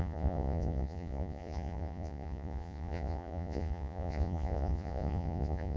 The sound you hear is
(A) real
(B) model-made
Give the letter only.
B